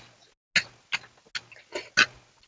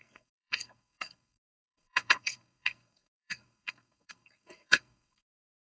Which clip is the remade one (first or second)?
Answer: second